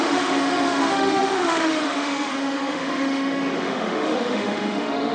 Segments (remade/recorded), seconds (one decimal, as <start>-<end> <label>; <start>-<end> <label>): 0.0-5.1 remade